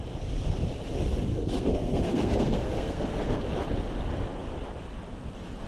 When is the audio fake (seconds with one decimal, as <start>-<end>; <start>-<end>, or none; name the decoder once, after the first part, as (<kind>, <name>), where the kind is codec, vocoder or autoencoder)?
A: 1.3-3.4 (codec, SNAC)